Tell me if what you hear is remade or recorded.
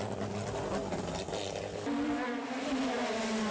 recorded